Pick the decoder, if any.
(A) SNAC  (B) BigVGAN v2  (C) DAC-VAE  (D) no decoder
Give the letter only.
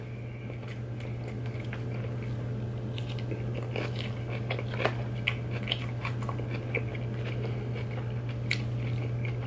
D